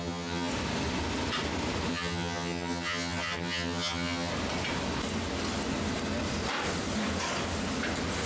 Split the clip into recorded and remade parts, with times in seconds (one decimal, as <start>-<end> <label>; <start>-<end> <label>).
0.0-0.5 remade; 0.5-1.9 recorded; 1.9-4.3 remade; 4.3-8.3 recorded